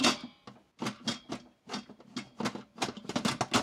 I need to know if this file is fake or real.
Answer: real